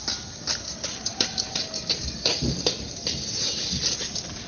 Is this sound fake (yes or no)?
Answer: yes